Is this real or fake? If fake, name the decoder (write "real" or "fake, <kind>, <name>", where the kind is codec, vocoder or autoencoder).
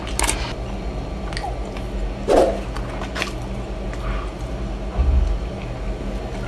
real